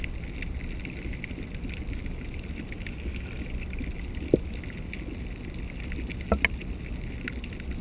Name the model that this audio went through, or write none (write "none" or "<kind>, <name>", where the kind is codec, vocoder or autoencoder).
none